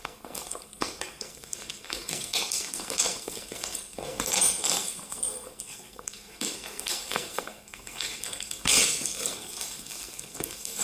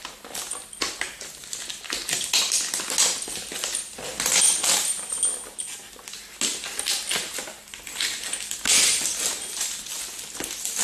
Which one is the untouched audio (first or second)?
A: second